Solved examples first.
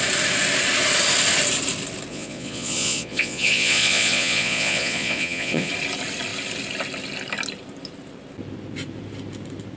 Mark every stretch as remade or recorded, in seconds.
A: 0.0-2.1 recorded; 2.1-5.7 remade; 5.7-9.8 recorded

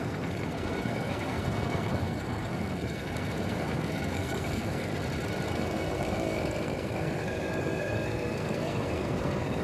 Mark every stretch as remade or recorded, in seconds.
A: 0.0-4.9 remade; 4.9-5.5 recorded; 5.5-9.6 remade